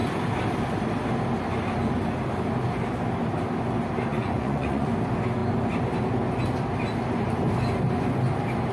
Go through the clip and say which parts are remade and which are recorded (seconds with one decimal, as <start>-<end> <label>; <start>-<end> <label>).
0.0-4.1 recorded; 4.1-4.9 remade; 4.9-8.7 recorded